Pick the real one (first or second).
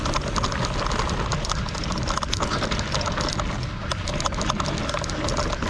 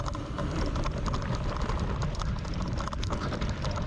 first